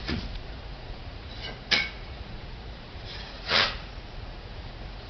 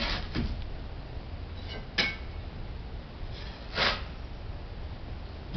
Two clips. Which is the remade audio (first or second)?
first